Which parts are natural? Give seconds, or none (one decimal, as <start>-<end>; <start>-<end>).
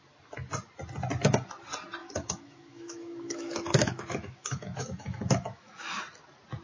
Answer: 0.0-2.0; 6.0-6.6